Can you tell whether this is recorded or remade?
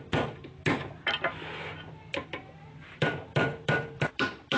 remade